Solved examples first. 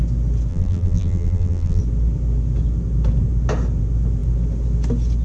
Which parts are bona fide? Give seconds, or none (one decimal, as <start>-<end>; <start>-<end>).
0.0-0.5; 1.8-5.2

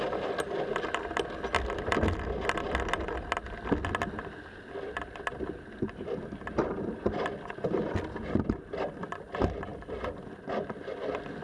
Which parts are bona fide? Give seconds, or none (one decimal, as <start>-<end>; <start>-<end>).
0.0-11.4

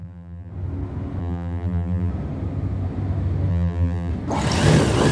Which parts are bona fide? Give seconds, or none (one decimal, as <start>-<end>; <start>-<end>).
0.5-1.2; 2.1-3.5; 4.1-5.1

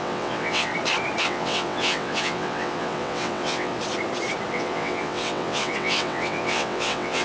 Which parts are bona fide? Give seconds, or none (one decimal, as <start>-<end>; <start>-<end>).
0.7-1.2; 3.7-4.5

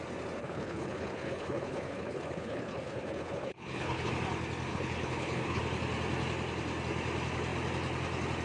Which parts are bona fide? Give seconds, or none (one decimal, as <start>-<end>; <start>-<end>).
0.0-0.4; 4.1-4.7; 5.6-8.4